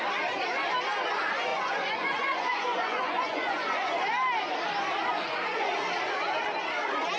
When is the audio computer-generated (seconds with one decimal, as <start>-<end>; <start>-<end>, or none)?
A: 1.5-4.0; 5.1-5.7